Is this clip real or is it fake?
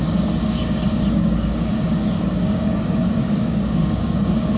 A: fake